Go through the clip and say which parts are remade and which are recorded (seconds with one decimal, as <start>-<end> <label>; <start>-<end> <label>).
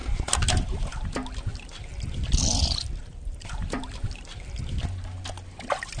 0.0-1.5 recorded; 1.5-4.6 remade; 4.6-6.0 recorded